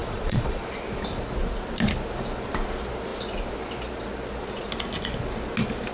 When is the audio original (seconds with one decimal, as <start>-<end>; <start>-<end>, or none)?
0.6-5.9